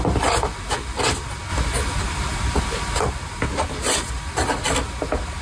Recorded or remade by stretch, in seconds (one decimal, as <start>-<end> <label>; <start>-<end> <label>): 0.0-5.4 recorded

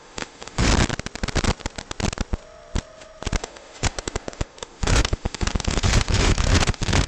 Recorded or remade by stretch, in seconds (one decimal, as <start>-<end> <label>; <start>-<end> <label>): 0.0-0.7 remade; 0.7-3.4 recorded; 3.4-7.1 remade

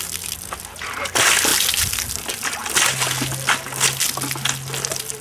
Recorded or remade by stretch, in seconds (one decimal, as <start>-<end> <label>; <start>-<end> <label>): 0.0-5.2 recorded

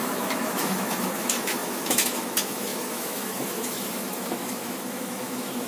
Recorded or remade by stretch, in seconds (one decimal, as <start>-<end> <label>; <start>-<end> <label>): 0.0-5.7 remade

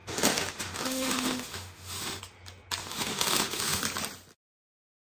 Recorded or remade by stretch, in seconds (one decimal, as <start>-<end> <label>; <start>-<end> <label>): 0.0-2.2 remade; 2.2-2.8 recorded; 2.8-3.8 remade; 3.8-5.1 recorded